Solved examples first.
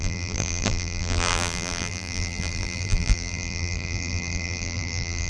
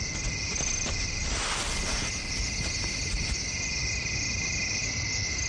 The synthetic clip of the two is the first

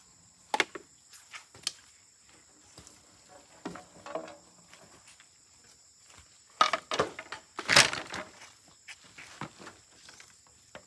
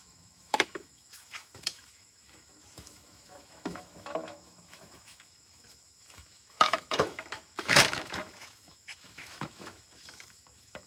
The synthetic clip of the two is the second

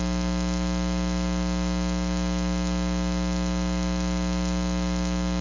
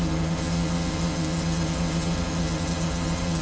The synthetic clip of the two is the second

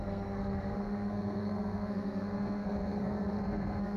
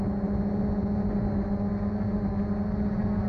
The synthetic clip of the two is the first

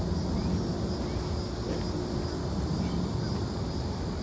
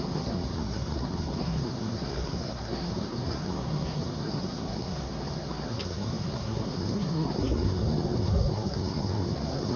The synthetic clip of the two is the second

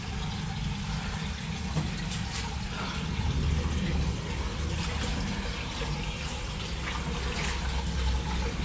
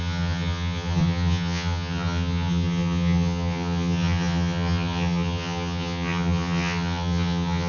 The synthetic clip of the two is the second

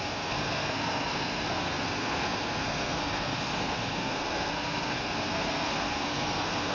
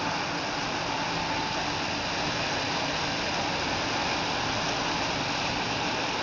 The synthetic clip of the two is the first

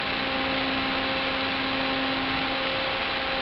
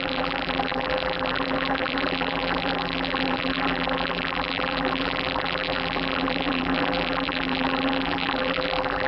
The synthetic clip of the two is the second